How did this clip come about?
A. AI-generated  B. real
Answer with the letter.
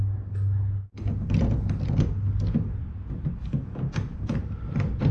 B